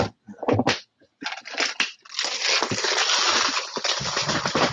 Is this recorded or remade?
recorded